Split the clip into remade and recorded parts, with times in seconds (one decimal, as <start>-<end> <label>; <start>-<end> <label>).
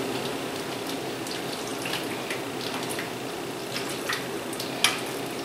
0.0-5.4 recorded